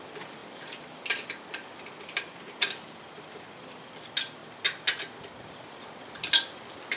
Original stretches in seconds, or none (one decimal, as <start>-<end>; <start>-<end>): 0.0-0.4; 3.9-7.0